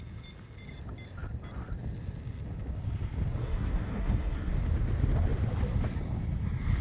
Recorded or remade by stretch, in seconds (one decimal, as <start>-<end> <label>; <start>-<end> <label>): 0.0-3.4 recorded; 3.4-4.5 remade; 4.5-6.8 recorded